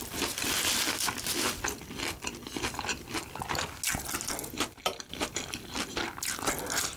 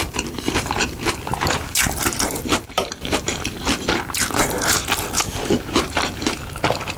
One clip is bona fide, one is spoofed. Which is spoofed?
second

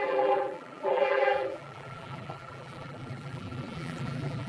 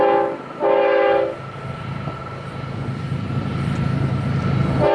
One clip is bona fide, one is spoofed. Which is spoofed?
first